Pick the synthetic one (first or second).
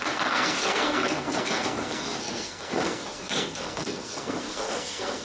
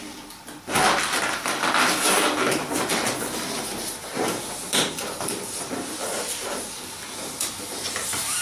first